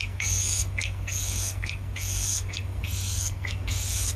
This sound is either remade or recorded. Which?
remade